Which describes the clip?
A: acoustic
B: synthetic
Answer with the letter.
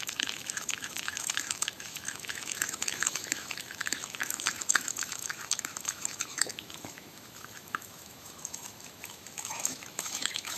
B